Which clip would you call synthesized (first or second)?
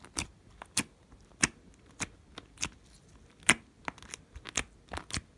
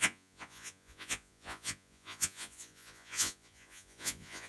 second